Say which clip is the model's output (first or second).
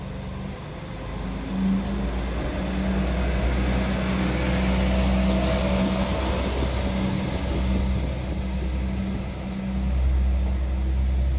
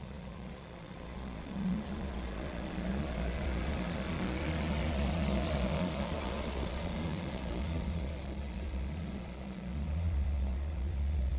second